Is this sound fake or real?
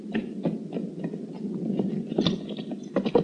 real